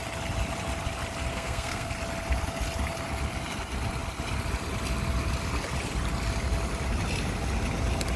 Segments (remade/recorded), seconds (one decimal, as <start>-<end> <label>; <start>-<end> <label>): 0.0-1.3 recorded; 1.3-1.9 remade; 1.9-8.2 recorded